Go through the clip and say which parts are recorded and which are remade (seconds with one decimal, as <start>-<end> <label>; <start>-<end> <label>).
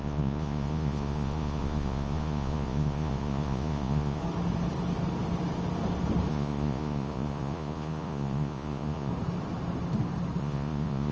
0.0-4.2 remade; 4.2-6.3 recorded; 6.3-9.1 remade; 9.1-10.4 recorded; 10.4-11.1 remade